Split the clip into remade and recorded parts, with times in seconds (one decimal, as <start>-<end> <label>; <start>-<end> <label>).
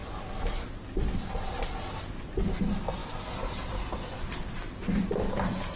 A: 0.0-1.9 remade; 1.9-3.0 recorded; 3.0-5.8 remade